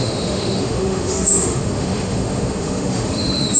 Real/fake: fake